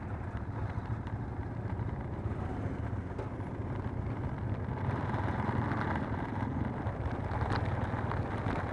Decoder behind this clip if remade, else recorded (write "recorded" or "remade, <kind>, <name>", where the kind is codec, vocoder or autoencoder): remade, vocoder, BigVGAN v2